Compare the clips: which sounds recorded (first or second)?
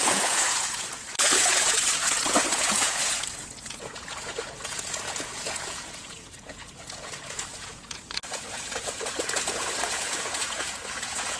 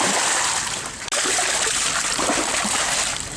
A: second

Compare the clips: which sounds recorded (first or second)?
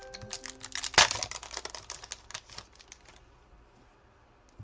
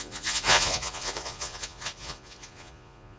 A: first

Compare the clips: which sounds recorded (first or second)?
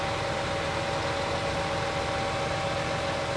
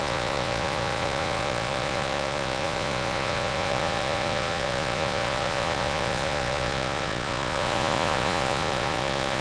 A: first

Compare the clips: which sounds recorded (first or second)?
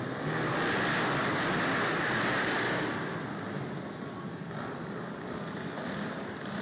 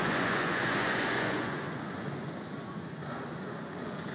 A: first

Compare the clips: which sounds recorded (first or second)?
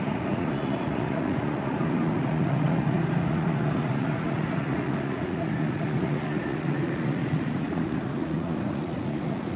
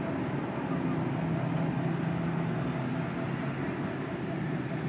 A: second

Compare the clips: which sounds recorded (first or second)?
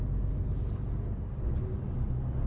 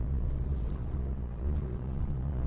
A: first